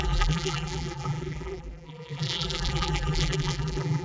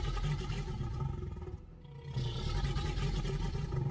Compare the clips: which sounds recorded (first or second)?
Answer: second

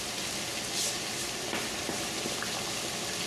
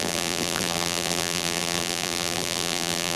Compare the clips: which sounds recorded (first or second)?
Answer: first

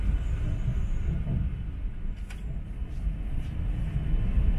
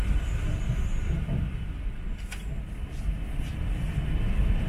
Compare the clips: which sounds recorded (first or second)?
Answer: first